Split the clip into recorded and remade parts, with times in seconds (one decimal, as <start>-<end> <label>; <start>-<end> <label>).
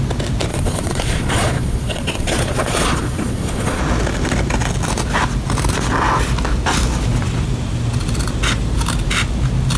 0.0-0.5 recorded; 0.5-3.8 remade; 3.8-9.8 recorded